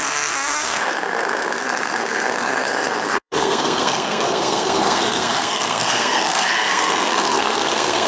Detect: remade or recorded remade